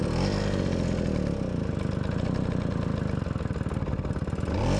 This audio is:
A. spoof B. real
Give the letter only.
B